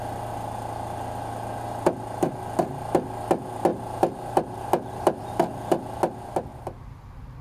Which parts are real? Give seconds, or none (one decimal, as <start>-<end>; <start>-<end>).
0.0-3.7; 5.3-6.5